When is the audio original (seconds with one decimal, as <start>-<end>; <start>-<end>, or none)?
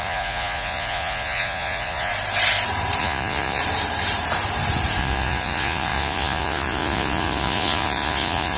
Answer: 2.1-3.0; 3.6-5.0